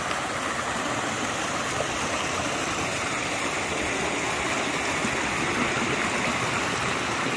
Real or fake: real